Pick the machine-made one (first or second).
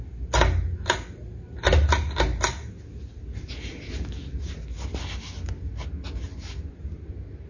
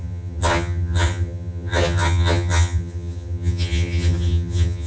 second